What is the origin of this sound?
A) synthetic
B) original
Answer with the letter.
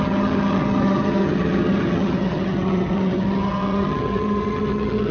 A